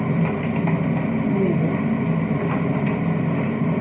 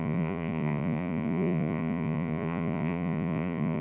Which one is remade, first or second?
second